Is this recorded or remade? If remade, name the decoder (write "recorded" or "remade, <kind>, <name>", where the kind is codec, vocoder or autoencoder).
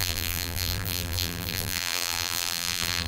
remade, vocoder, BigVGAN v2